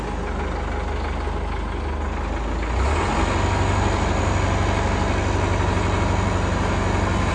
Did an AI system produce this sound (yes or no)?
no